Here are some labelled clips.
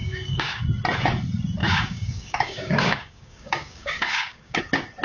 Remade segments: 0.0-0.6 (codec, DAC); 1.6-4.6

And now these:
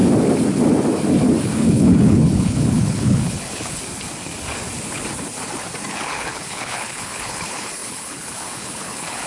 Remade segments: 1.4-3.8 (codec, HILCodec); 5.9-9.3

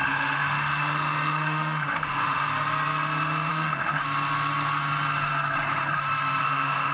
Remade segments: 0.0-2.5 (autoencoder, DAC-VAE); 3.5-4.0; 6.4-6.9

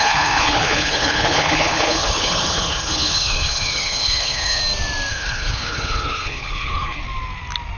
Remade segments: 0.0-4.6 (codec, HILCodec); 5.1-7.0

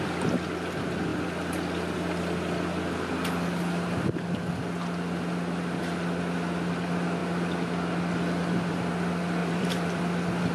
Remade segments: 9.4-10.0 (vocoder, BigVGAN v2)

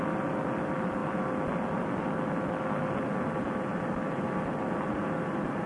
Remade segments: none